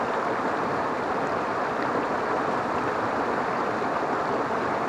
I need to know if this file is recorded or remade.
recorded